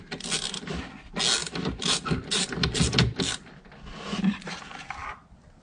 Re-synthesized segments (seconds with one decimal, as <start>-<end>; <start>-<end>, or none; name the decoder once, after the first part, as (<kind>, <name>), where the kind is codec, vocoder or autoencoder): 1.4-3.7 (vocoder, BigVGAN v2)